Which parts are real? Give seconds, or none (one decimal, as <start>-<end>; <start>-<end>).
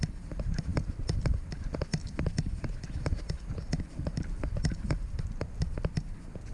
0.0-6.5